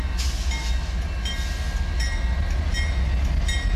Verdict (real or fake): real